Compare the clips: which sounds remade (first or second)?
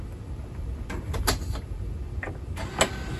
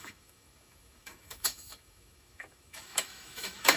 second